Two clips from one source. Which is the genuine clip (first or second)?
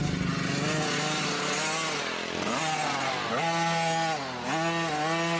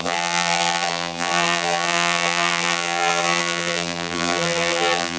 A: first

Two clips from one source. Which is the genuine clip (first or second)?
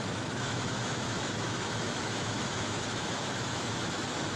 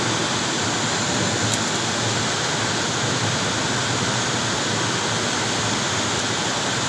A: second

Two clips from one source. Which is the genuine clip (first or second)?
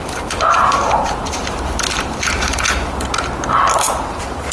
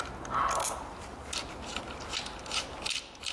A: second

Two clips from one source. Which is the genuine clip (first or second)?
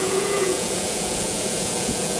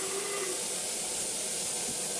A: second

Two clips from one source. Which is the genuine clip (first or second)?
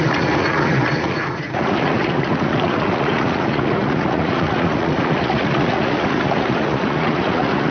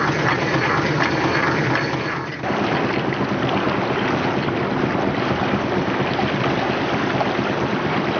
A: second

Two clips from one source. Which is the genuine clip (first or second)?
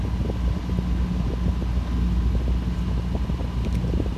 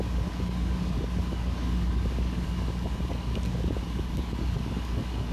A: first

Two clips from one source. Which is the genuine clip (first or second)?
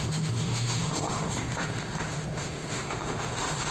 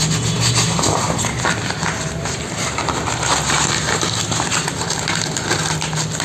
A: second